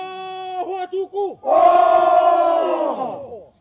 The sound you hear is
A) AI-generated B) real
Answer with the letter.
B